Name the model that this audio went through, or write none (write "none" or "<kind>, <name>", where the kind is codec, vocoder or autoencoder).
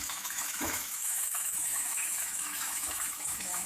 autoencoder, DAC-VAE